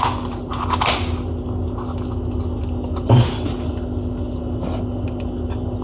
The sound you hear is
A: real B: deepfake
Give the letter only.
A